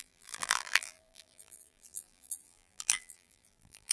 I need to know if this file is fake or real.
fake